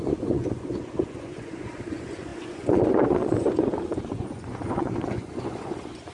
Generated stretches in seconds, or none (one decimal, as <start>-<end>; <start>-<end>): 0.0-6.1